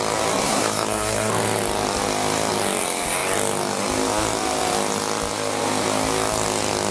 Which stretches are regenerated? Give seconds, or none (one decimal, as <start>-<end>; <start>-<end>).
0.4-1.3